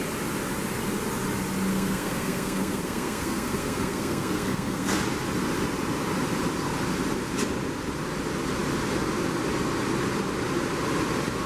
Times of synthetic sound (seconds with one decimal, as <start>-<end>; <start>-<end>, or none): 1.7-5.0